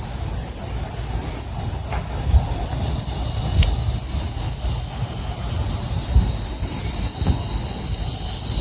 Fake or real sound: real